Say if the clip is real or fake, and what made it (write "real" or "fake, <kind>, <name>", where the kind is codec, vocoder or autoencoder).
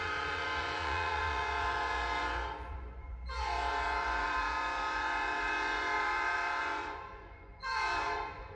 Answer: fake, vocoder, Vocos